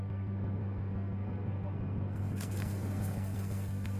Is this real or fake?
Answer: fake